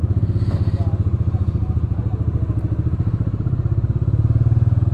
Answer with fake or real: real